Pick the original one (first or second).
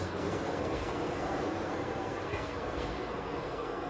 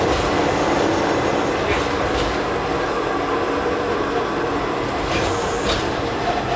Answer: second